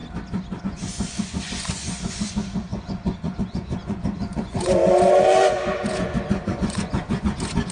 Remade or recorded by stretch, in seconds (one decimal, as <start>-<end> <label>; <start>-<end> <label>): 0.0-0.6 recorded; 0.6-7.7 remade